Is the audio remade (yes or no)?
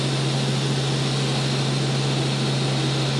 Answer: no